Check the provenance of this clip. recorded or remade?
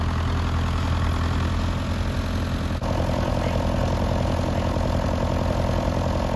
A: recorded